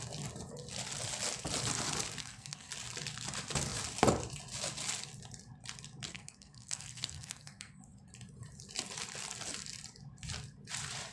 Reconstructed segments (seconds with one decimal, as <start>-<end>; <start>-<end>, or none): 2.2-2.7; 6.1-7.8